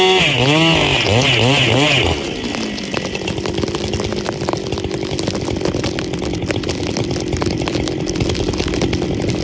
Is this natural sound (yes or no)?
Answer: yes